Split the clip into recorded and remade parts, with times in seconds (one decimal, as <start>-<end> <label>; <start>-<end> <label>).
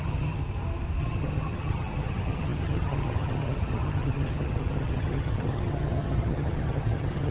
0.0-0.4 remade; 0.4-1.0 recorded; 1.0-7.3 remade